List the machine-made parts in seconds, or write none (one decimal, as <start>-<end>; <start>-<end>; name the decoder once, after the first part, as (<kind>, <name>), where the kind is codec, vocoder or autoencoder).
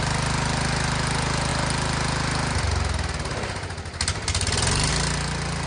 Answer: none